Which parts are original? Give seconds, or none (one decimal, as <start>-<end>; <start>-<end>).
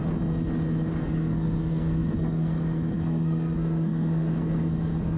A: 0.0-1.0